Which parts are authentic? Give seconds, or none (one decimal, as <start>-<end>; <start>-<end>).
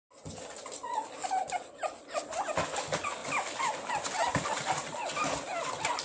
0.0-3.2; 3.9-6.0